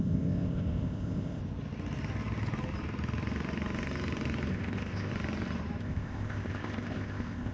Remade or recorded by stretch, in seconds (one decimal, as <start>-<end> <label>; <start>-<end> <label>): 0.0-1.4 remade; 1.4-4.5 recorded; 4.5-5.1 remade; 5.1-5.8 recorded; 5.8-7.5 remade